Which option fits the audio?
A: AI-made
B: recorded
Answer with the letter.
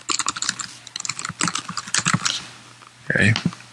B